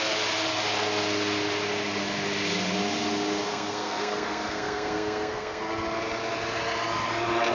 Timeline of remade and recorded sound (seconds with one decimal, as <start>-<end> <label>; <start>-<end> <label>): 0.0-3.5 recorded; 3.5-5.6 remade; 5.6-7.5 recorded